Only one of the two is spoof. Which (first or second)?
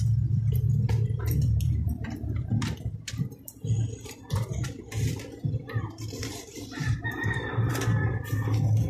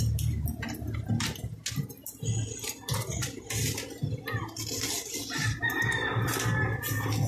first